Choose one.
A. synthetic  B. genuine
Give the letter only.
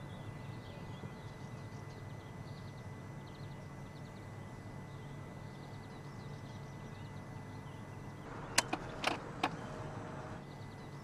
B